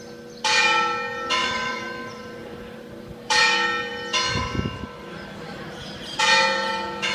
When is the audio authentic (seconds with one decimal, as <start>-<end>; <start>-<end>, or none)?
0.0-1.4; 3.4-5.5; 6.2-7.1